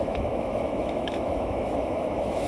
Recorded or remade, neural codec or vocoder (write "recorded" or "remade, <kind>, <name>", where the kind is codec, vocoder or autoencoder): remade, autoencoder, DAC-VAE